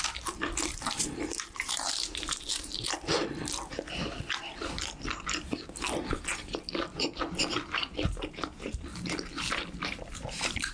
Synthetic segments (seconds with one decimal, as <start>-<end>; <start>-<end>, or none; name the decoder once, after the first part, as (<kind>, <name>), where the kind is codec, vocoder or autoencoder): 0.0-2.7 (vocoder, BigVGAN v2); 7.2-8.9; 9.5-10.7

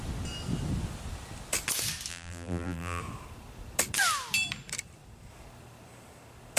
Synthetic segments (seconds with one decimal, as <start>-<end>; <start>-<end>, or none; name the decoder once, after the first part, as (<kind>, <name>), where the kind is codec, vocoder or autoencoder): 2.1-3.0 (vocoder, BigVGAN v2)

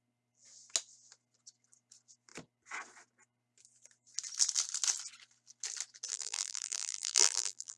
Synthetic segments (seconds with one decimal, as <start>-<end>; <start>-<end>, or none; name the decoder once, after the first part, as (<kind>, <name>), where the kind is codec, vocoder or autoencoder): 6.1-7.8 (vocoder, BigVGAN v2)

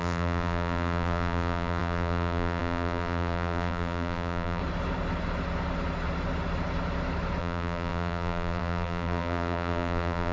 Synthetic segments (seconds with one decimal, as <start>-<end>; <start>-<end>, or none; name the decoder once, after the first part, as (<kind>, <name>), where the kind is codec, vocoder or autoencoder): 0.0-4.6 (vocoder, BigVGAN v2); 7.4-10.3